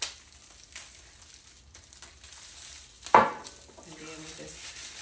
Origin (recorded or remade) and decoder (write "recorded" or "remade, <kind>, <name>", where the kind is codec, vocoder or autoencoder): recorded